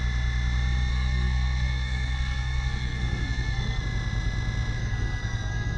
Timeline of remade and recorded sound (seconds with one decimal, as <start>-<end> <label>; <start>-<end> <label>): 0.0-0.9 recorded; 0.9-3.8 remade; 3.8-4.8 recorded; 4.8-5.8 remade